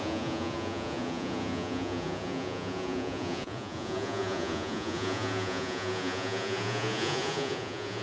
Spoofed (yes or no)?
yes